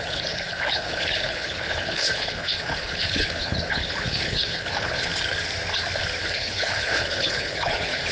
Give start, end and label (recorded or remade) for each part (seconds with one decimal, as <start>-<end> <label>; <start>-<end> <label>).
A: 0.0-5.1 remade; 5.1-6.2 recorded; 6.2-8.1 remade